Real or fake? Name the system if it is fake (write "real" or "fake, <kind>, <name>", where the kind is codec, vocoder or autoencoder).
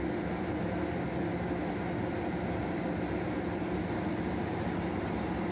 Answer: real